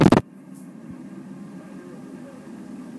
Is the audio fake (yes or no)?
no